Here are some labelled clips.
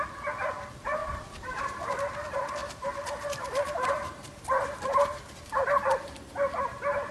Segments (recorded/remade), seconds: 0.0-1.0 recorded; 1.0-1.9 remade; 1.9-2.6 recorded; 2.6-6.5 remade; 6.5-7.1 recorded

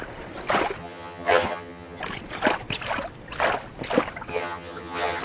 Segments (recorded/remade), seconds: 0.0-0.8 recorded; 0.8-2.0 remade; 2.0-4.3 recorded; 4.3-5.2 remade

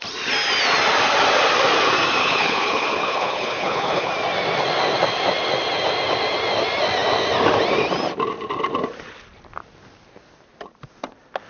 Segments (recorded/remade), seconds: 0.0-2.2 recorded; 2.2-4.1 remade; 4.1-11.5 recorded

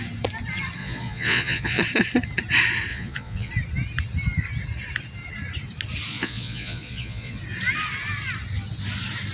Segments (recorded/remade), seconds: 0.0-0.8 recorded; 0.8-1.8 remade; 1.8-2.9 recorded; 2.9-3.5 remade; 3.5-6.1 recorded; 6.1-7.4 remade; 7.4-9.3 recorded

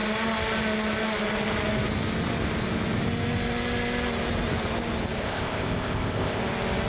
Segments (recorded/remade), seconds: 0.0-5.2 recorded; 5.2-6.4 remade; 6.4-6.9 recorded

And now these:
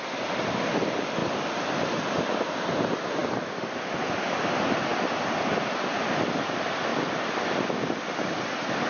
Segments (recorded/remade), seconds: 0.0-4.9 recorded; 4.9-6.4 remade; 6.4-6.9 recorded; 6.9-7.4 remade; 7.4-8.9 recorded